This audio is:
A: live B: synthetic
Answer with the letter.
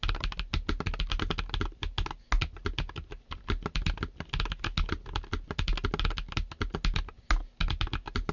A